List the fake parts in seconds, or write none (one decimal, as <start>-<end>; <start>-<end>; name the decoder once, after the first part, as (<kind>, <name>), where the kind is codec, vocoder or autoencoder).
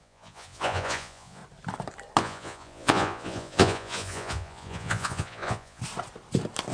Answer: 0.0-1.4 (vocoder, Vocos); 2.2-5.8